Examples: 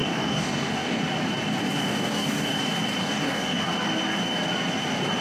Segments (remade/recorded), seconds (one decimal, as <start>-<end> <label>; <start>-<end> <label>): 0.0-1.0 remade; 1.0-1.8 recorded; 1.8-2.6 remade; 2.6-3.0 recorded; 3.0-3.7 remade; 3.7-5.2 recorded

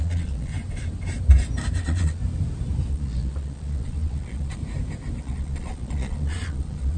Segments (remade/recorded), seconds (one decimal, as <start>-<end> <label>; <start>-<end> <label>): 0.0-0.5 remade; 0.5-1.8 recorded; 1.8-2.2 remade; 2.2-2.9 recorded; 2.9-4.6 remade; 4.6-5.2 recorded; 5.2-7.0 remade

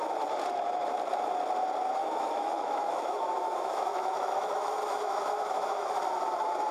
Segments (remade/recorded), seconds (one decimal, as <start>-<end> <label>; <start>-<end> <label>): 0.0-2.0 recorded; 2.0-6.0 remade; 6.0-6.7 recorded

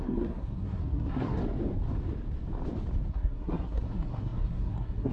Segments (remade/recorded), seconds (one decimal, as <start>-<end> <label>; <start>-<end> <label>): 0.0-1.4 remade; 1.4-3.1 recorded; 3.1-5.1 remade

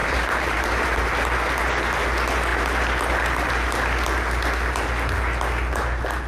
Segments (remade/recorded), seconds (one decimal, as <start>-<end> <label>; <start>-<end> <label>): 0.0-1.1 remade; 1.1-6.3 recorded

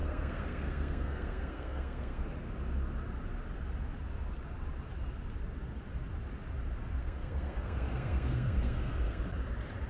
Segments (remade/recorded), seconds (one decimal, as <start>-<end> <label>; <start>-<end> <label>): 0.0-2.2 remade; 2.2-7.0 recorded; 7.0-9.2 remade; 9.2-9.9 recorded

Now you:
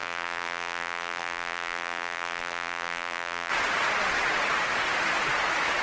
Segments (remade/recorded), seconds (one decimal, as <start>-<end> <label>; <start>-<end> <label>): 0.0-3.5 remade; 3.5-5.8 recorded

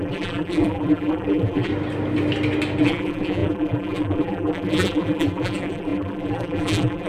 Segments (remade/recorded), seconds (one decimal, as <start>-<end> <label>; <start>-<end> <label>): 0.0-1.7 remade; 1.7-2.8 recorded; 2.8-7.1 remade